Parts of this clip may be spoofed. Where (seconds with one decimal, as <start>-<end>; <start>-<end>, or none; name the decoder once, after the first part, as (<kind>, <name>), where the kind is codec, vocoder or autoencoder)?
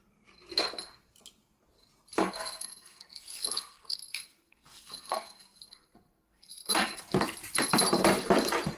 2.2-7.0 (codec, SNAC)